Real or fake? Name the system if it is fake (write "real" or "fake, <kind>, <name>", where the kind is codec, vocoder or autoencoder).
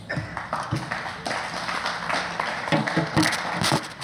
real